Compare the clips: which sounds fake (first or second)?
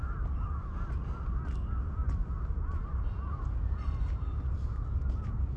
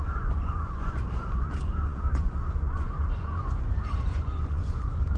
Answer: second